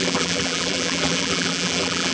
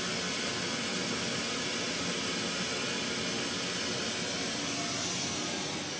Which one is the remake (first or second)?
first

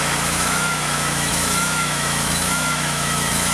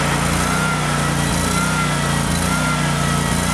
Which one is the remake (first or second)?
first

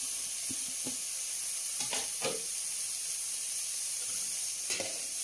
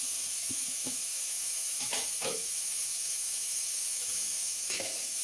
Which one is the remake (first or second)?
second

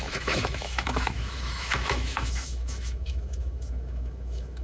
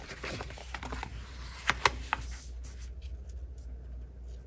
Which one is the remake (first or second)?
first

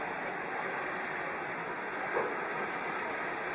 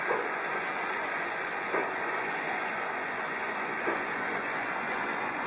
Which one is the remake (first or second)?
second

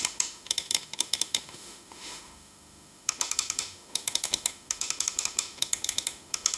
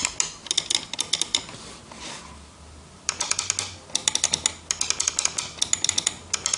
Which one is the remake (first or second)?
first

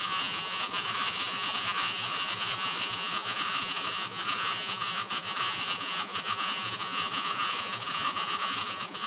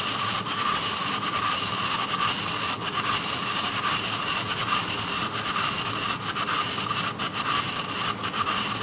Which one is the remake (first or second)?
first